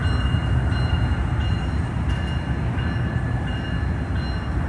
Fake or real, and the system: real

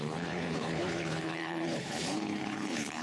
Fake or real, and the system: fake, codec, HILCodec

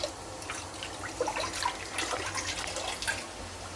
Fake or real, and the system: real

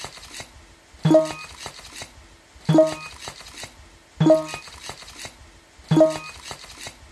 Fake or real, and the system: real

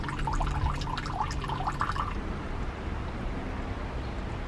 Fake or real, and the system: real